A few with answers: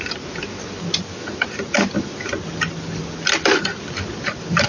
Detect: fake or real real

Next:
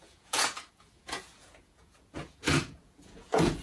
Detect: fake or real fake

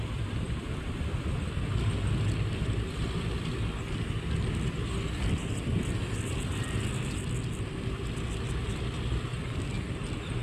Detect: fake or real real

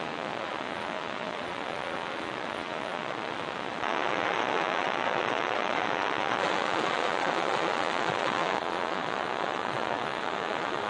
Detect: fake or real fake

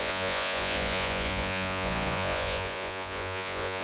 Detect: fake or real fake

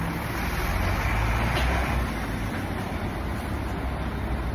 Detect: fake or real real